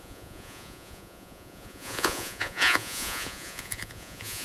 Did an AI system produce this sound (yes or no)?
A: yes